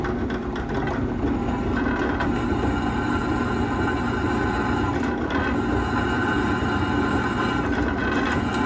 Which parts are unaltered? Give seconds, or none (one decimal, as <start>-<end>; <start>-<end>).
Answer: 0.0-8.7